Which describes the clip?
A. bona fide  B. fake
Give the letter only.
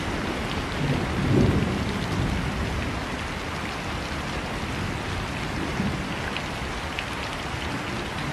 A